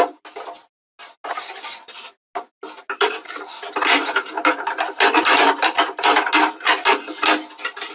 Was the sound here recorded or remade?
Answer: recorded